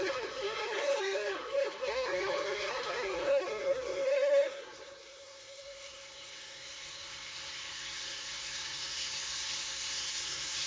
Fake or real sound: fake